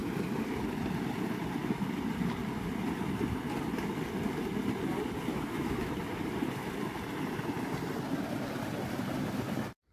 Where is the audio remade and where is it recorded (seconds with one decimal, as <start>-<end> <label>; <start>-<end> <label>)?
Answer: 0.0-5.3 recorded; 5.3-6.0 remade; 6.0-9.9 recorded

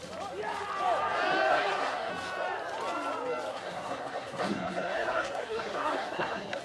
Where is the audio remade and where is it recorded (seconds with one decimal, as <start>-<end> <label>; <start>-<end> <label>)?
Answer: 0.0-1.5 recorded; 1.5-2.1 remade; 2.1-3.5 recorded; 3.5-6.6 remade

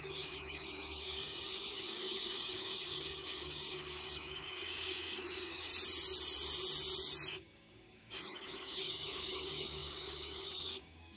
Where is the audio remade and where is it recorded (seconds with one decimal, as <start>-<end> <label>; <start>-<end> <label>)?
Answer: 0.0-5.7 remade; 5.7-7.3 recorded; 7.3-11.2 remade

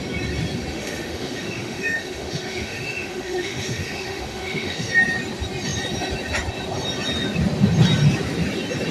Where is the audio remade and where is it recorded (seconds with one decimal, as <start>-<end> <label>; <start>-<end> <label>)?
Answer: 0.0-0.7 recorded; 0.7-4.9 remade; 4.9-8.9 recorded

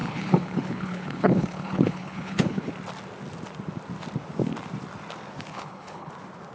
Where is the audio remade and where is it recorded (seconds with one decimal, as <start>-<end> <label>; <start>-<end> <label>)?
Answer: 0.0-2.7 remade; 2.7-5.5 recorded; 5.5-6.1 remade; 6.1-6.5 recorded